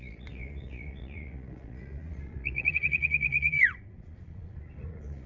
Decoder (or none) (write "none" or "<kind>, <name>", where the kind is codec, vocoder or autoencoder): vocoder, Vocos